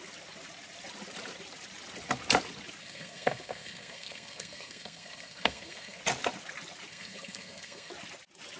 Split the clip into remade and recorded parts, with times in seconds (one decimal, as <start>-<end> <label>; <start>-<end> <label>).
0.0-2.8 recorded; 2.8-6.0 remade; 6.0-6.9 recorded; 6.9-7.9 remade; 7.9-8.6 recorded